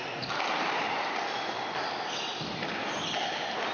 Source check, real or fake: real